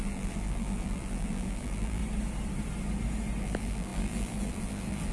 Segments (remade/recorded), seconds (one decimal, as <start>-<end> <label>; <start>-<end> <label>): 0.0-2.0 remade; 2.0-3.4 recorded; 3.4-5.1 remade